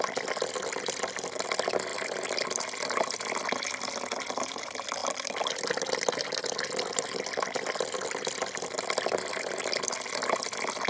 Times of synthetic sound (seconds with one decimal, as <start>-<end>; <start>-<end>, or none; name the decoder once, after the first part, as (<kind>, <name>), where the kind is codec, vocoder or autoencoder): 5.0-9.8 (vocoder, BigVGAN v2)